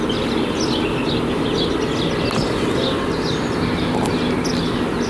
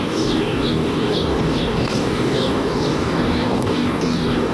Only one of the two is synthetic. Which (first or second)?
second